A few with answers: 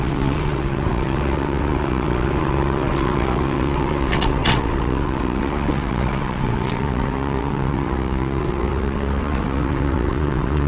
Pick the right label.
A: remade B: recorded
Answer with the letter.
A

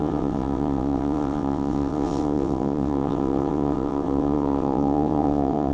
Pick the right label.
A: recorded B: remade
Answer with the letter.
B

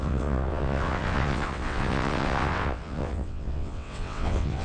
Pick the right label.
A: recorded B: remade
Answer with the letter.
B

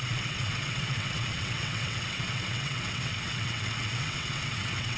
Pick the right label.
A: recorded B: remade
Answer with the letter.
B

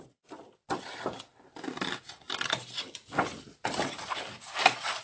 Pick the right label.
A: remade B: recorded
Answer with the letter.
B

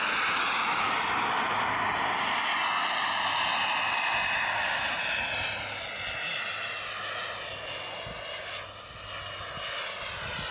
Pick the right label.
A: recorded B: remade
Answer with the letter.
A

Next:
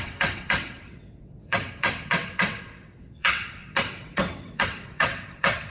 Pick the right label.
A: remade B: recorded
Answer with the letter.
A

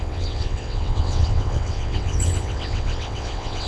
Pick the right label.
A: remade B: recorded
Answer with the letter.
A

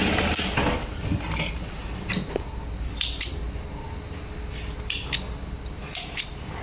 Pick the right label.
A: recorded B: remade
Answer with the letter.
A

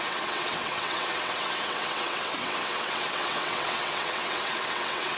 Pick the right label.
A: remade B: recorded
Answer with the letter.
A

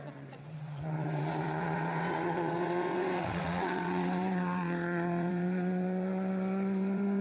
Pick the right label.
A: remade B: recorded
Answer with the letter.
A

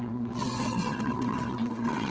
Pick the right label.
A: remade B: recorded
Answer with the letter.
A